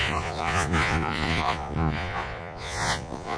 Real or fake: fake